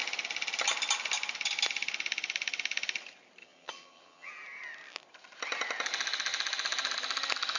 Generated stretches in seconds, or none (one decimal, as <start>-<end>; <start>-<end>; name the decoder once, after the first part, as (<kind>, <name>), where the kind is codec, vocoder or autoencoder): 3.4-4.3 (vocoder, HiFi-GAN)